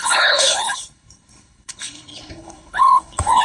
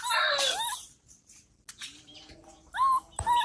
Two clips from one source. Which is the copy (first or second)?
first